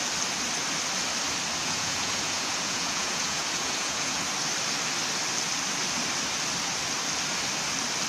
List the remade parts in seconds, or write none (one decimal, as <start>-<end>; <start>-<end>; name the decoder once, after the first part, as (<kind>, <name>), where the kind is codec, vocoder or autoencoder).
1.6-4.2 (vocoder, Vocos)